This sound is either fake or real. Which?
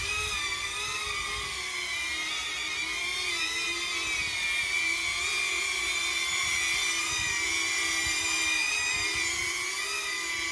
real